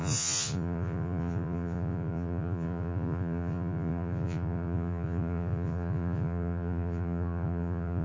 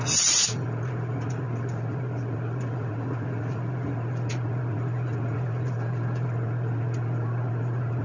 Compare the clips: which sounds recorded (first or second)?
second